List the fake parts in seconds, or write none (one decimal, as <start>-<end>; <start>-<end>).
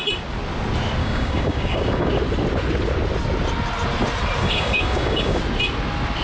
1.0-2.1; 4.4-5.4